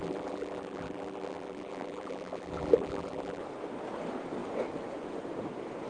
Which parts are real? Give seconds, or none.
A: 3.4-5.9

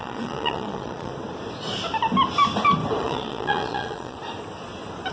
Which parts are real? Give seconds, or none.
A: 1.1-3.0; 4.2-5.1

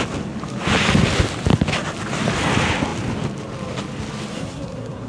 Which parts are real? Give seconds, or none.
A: 0.0-4.3

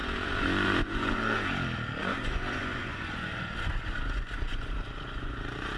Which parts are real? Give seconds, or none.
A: 1.5-2.0

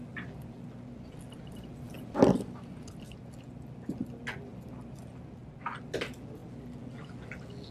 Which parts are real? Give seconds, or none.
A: 0.0-7.7